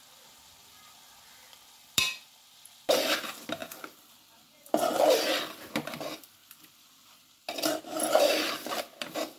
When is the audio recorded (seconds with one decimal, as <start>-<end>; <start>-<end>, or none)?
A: 3.6-5.0